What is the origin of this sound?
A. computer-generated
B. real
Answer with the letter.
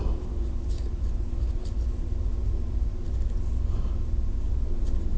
B